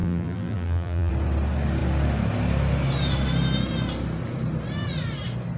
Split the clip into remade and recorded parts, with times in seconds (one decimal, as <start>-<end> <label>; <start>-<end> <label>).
0.0-1.1 remade; 1.1-5.6 recorded